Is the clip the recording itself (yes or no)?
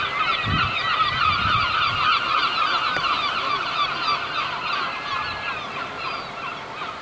yes